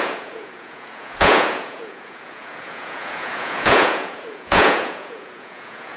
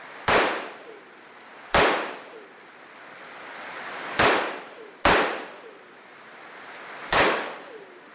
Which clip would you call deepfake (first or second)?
first